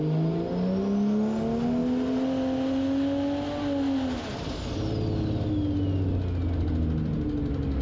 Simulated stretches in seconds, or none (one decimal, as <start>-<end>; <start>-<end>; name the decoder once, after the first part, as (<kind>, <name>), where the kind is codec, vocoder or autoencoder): none